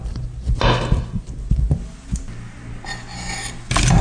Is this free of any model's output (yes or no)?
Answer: yes